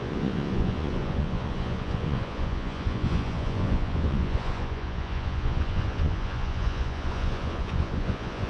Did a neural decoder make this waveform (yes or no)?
yes